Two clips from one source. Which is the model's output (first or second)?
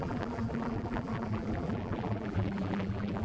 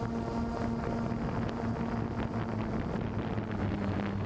first